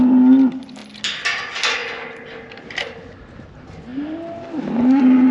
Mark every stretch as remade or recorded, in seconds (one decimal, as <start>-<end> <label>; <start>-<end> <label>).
0.0-5.3 recorded